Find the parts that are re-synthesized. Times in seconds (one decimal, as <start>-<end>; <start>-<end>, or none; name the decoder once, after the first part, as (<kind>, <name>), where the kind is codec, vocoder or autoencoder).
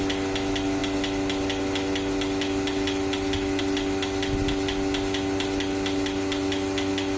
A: none